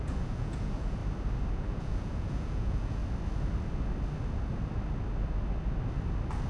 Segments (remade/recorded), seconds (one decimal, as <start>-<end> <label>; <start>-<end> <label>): 0.0-1.0 remade; 1.0-1.5 recorded; 1.5-3.0 remade; 3.0-6.5 recorded